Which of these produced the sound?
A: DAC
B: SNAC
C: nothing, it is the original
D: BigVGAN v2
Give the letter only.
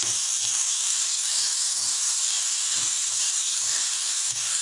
A